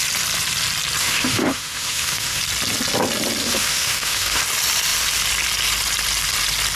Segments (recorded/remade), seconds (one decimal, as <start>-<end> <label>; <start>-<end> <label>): 0.0-1.0 recorded; 1.0-2.4 remade; 2.4-3.4 recorded; 3.4-4.4 remade; 4.4-6.8 recorded